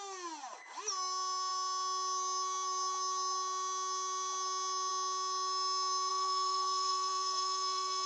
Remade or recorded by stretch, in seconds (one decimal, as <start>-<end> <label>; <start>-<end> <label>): 0.0-6.1 recorded; 6.1-8.1 remade